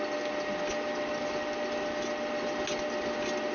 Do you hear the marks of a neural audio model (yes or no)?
no